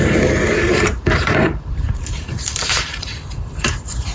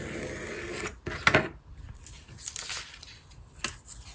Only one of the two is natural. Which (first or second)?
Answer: second